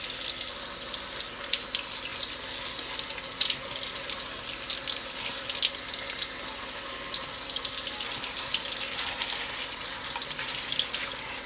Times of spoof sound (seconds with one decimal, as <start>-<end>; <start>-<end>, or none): none

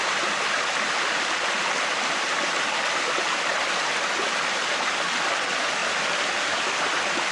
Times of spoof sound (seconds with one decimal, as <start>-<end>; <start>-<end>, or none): none

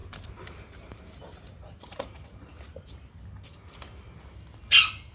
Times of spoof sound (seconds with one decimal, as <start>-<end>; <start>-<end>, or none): 0.0-3.1

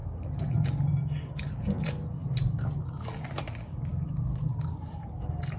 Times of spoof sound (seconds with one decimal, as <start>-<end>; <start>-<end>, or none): 2.2-3.2

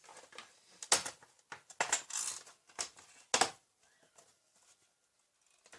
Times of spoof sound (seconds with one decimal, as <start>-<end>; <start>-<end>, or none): none

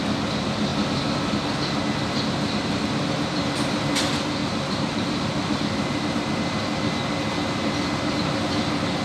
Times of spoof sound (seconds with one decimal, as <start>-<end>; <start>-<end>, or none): 4.4-6.1

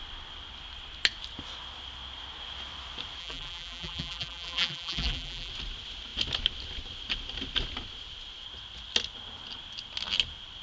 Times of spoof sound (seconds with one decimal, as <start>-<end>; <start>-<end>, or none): 3.2-5.5

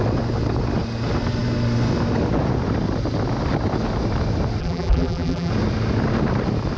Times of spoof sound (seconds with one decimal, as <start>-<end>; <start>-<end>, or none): 4.6-5.5